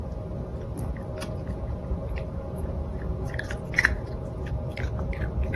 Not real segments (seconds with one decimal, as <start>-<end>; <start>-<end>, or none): 1.2-4.5